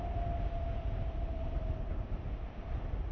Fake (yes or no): no